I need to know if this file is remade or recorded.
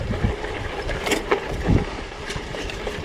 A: remade